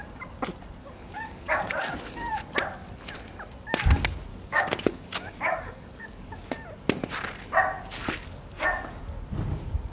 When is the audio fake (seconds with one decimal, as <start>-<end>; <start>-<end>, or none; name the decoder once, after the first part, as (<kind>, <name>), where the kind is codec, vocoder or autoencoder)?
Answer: 0.8-2.3 (codec, DAC); 4.3-6.5; 8.0-9.0